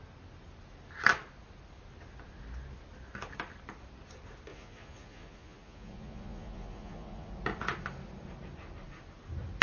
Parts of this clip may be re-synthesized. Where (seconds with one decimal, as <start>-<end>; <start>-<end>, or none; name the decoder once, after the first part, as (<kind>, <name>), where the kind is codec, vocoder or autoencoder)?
4.5-7.3 (vocoder, Vocos)